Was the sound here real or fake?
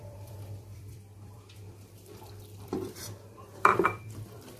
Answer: fake